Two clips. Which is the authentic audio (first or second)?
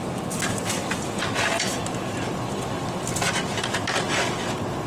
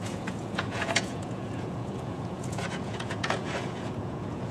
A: first